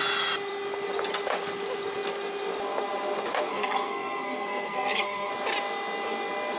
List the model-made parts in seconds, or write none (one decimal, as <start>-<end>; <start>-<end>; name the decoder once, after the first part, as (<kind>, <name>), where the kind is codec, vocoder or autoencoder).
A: 3.5-5.3 (codec, SNAC)